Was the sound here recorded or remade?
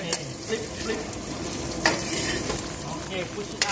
remade